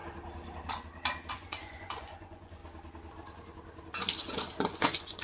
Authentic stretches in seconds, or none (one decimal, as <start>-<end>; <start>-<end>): 0.0-1.3; 2.6-4.6